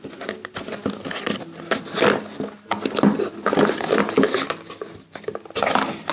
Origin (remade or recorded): recorded